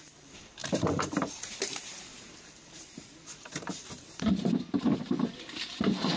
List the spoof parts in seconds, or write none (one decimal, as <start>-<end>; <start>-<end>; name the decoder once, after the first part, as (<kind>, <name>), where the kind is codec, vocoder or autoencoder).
0.6-1.6 (vocoder, BigVGAN v2); 2.1-4.8